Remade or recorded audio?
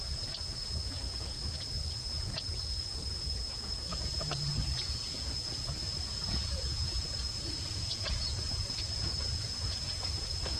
remade